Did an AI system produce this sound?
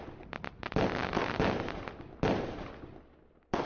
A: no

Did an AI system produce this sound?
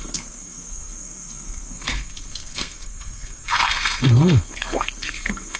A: yes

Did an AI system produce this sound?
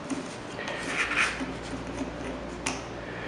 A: no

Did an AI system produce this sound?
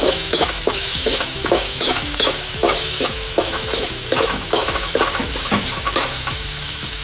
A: yes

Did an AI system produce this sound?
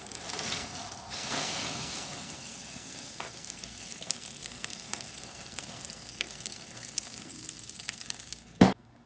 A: yes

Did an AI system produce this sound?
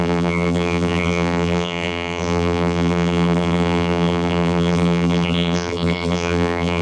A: yes